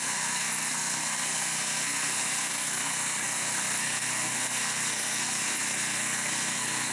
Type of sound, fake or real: fake